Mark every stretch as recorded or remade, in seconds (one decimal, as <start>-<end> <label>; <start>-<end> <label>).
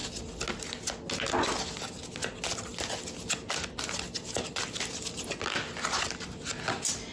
0.0-7.1 recorded